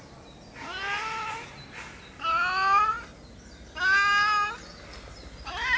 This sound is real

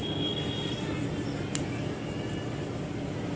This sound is real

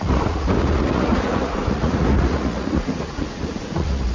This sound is fake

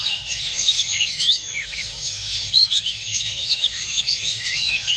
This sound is fake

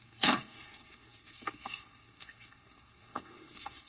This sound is fake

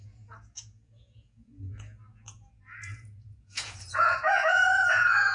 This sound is fake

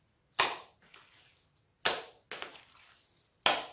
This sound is real